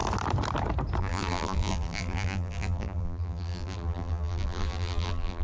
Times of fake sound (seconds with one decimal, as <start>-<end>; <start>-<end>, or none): 1.0-5.4